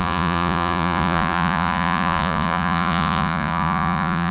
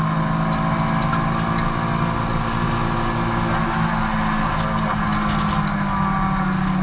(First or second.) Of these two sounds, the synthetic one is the first